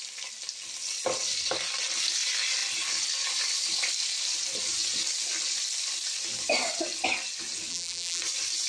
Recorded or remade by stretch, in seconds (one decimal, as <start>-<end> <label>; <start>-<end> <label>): 0.0-7.7 recorded; 7.7-8.2 remade; 8.2-8.7 recorded

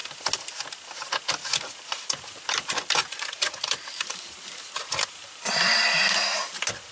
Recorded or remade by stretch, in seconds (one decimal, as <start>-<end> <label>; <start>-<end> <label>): 0.0-1.4 recorded; 1.4-5.5 remade; 5.5-6.9 recorded

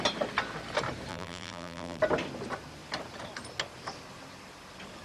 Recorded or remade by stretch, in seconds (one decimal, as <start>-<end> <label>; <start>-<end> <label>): 0.0-1.1 recorded; 1.1-2.0 remade; 2.0-5.0 recorded

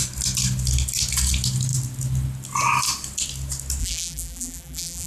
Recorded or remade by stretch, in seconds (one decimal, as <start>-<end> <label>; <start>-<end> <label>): 0.0-3.8 recorded; 3.8-5.1 remade

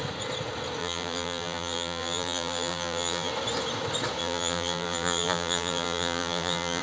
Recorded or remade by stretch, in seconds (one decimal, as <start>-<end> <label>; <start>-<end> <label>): 0.0-0.8 recorded; 0.8-3.3 remade; 3.3-4.2 recorded; 4.2-6.8 remade

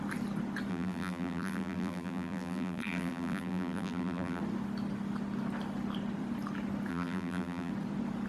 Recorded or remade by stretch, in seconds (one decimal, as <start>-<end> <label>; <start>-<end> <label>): 0.0-0.7 recorded; 0.7-4.4 remade; 4.4-6.9 recorded; 6.9-7.7 remade; 7.7-8.3 recorded

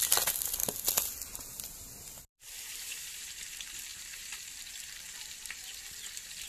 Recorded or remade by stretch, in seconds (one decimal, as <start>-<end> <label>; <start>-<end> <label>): 0.0-0.6 remade; 0.6-2.2 recorded; 2.2-6.5 remade

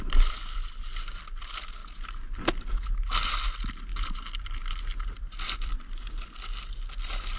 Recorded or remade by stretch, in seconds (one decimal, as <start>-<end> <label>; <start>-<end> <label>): 0.0-1.8 recorded; 1.8-2.7 remade; 2.7-7.4 recorded